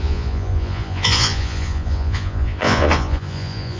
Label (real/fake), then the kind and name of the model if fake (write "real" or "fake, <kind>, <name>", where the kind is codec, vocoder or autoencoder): fake, vocoder, Vocos